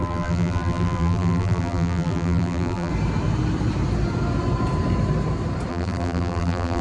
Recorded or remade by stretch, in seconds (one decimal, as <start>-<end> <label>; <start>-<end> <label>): 0.0-2.9 remade; 2.9-5.7 recorded; 5.7-6.8 remade